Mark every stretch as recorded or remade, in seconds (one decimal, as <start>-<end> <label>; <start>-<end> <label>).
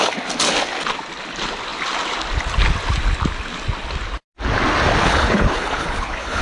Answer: 0.0-5.0 recorded; 5.0-6.4 remade